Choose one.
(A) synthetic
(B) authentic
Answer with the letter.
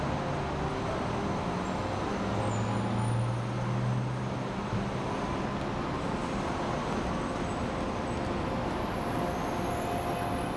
B